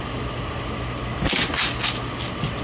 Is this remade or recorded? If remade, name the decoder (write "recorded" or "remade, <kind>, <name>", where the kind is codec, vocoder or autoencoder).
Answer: recorded